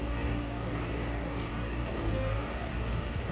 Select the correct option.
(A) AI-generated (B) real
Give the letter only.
A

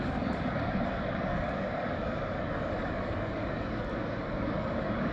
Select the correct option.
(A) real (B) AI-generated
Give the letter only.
B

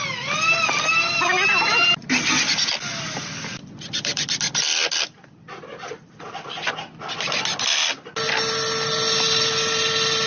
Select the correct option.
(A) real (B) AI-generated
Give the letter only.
A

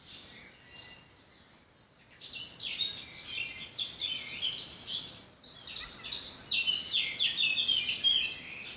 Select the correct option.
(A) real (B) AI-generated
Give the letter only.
A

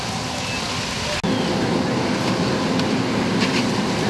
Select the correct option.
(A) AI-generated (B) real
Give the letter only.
B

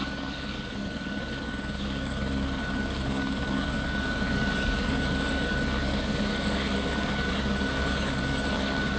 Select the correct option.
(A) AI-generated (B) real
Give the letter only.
A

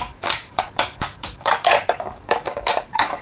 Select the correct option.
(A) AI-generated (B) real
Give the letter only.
A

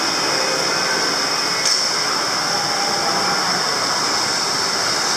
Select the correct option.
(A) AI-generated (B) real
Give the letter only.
B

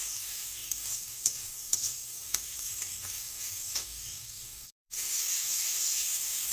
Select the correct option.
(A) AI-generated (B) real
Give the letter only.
A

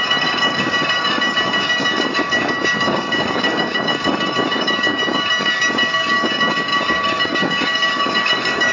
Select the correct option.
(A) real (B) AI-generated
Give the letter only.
B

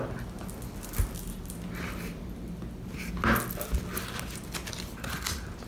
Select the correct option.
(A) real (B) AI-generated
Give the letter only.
A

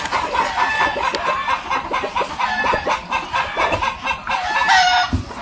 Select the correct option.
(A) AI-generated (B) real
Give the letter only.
B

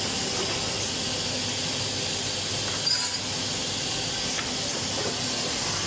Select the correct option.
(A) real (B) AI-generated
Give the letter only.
A